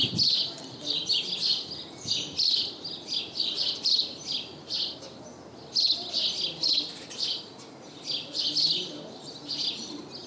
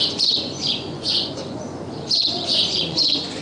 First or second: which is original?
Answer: first